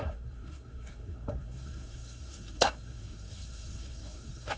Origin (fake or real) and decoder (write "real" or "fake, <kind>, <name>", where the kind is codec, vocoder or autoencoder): fake, codec, SNAC